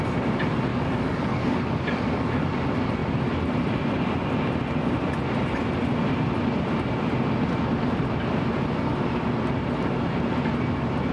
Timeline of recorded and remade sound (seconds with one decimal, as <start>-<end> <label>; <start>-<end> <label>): 0.0-0.7 recorded; 0.7-2.5 remade; 2.5-11.1 recorded